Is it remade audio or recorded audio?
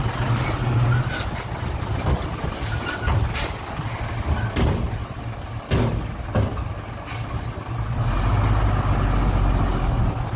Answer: recorded